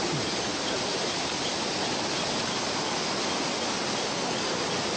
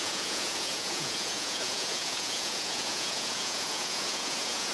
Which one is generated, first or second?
second